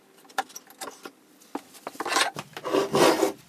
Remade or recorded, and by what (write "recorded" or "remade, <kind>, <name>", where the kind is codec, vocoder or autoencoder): recorded